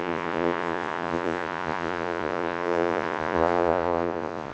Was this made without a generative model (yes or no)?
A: no